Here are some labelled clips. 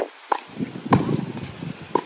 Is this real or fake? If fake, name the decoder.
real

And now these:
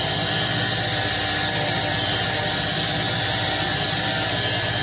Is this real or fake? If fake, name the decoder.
real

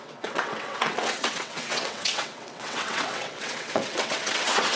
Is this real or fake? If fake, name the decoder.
fake, vocoder, WaveNeXt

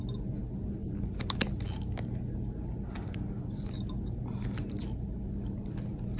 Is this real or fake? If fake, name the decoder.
real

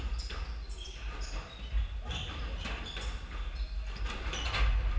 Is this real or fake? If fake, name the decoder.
real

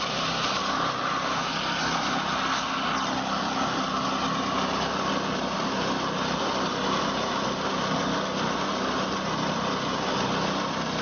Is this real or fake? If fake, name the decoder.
real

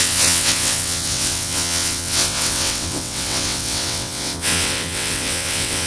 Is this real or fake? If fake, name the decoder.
fake, vocoder, WaveNeXt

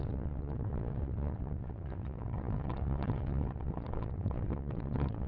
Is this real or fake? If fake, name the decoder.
fake, vocoder, WaveNeXt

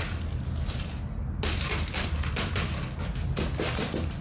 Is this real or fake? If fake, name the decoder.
real